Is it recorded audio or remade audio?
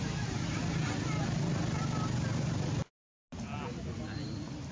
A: recorded